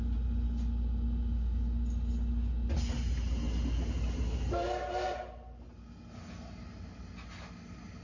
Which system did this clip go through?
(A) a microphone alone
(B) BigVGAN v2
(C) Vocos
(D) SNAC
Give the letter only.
A